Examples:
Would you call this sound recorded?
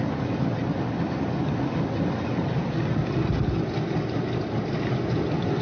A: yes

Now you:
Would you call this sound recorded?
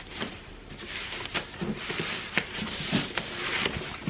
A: yes